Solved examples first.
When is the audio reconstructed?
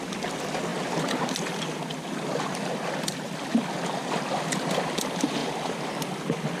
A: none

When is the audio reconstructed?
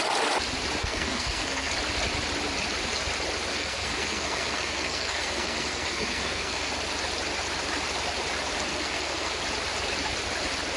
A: 0.8-1.7 (codec, SNAC); 3.5-6.7; 8.7-9.4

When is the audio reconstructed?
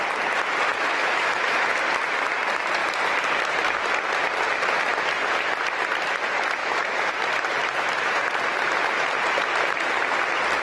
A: 0.7-1.7 (autoencoder, DAC-VAE); 6.6-7.1